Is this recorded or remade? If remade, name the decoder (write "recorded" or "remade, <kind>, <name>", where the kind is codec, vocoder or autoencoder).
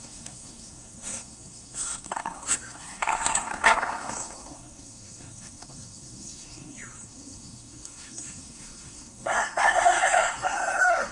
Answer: remade, codec, SNAC